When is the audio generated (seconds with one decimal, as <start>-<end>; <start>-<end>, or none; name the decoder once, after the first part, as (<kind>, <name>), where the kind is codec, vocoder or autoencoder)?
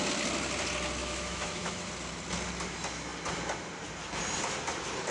1.0-1.9 (autoencoder, DAC-VAE)